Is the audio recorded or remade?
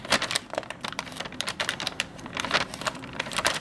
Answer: remade